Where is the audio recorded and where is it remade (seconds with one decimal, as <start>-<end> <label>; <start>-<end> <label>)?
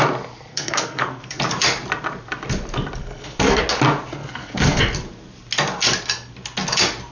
0.0-0.5 recorded; 0.5-1.4 remade; 1.4-3.0 recorded; 3.0-3.6 remade; 3.6-4.2 recorded; 4.2-4.8 remade; 4.8-7.1 recorded